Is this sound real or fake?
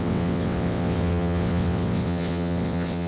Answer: fake